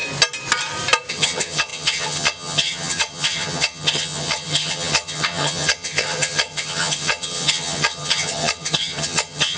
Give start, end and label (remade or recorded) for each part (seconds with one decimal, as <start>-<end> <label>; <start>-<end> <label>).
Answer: 0.0-1.1 recorded; 1.1-9.6 remade